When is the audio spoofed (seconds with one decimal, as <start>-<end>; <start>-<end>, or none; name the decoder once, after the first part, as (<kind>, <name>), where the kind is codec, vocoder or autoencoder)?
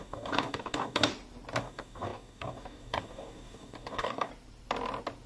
0.0-1.1 (codec, DAC); 1.6-4.3